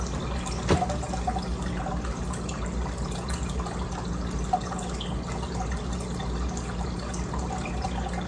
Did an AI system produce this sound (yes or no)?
no